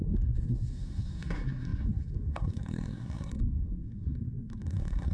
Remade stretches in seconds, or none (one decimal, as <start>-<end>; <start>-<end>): 0.0-5.1